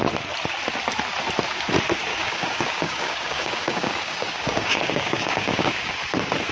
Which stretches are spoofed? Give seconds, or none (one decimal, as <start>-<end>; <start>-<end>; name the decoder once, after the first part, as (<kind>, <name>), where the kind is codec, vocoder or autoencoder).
2.1-5.9 (codec, DAC)